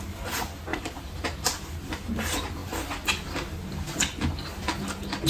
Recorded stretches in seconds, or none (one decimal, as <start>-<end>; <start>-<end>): 0.0-0.7; 2.2-5.3